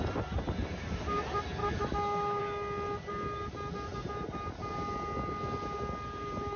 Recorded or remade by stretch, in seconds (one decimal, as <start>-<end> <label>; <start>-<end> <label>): 0.0-1.6 recorded; 1.6-2.4 remade; 2.4-6.6 recorded